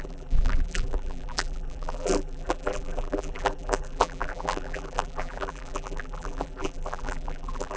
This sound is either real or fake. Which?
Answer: fake